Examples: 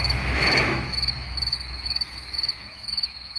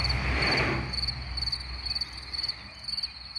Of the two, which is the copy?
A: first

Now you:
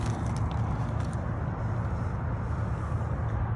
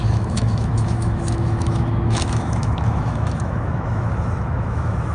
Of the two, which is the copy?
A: second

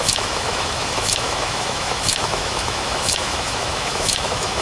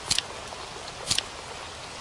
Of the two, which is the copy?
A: first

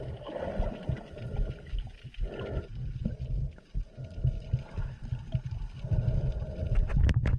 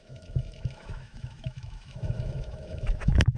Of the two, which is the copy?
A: second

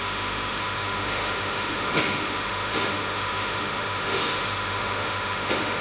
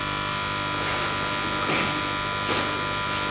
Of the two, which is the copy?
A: first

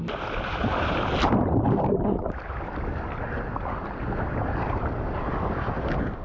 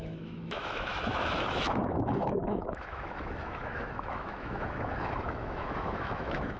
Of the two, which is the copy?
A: second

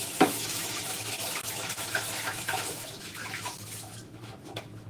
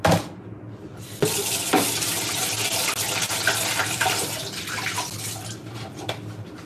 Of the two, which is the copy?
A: first